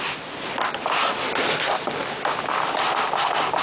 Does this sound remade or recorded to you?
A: recorded